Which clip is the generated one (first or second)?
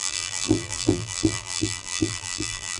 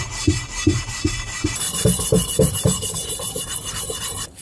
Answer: first